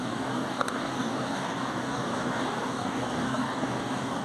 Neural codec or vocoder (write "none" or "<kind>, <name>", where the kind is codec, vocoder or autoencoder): codec, DAC